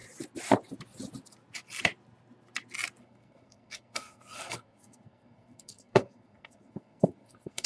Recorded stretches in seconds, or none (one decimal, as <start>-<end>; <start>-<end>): 0.0-3.0